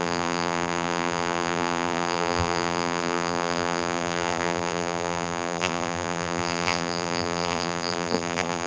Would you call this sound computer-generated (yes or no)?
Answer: yes